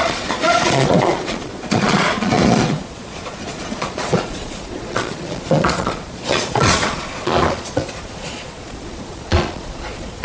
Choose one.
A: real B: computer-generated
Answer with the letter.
B